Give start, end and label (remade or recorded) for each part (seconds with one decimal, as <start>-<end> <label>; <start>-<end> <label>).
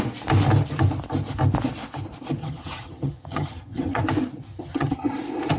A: 0.0-2.4 recorded; 2.4-4.0 remade; 4.0-4.5 recorded; 4.5-5.1 remade; 5.1-5.6 recorded